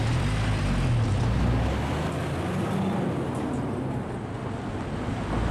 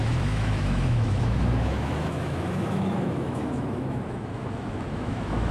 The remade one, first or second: second